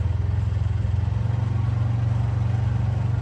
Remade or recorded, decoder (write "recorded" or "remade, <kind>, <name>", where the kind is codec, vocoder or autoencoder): recorded